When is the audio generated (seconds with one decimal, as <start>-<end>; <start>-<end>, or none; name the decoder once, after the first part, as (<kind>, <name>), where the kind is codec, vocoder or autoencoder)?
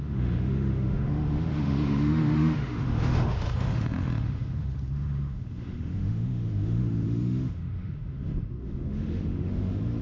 0.0-10.0 (autoencoder, DAC-VAE)